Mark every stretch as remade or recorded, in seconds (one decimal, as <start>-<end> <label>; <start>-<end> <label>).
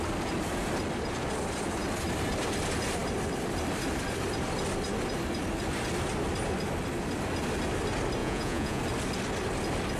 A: 0.0-8.2 recorded; 8.2-8.8 remade; 8.8-10.0 recorded